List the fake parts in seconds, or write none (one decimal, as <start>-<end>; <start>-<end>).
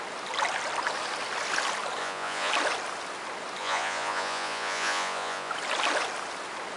2.0-2.5; 3.6-5.5